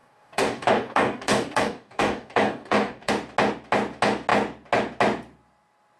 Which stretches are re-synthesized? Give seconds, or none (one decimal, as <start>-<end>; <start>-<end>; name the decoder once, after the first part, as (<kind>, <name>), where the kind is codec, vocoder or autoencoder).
0.0-3.1 (codec, DAC)